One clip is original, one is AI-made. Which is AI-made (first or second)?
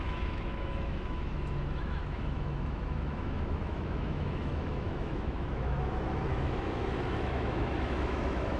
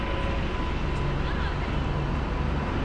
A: first